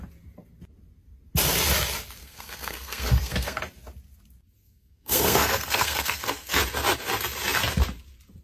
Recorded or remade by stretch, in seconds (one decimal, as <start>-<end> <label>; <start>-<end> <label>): 0.0-2.2 recorded; 2.2-3.6 remade; 3.6-4.6 recorded; 4.6-6.6 remade; 6.6-8.4 recorded